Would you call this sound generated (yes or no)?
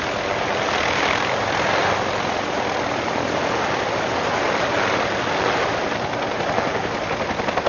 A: no